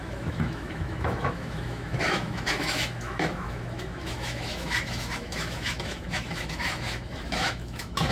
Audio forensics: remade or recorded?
remade